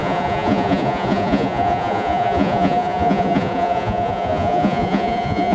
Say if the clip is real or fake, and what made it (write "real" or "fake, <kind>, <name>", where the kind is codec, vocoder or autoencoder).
fake, vocoder, Vocos